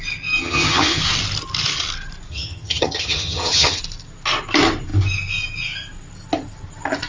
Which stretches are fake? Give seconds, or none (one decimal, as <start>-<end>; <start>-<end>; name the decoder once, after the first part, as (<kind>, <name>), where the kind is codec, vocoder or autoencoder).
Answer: 0.4-1.0 (vocoder, HiFi-GAN); 2.3-3.8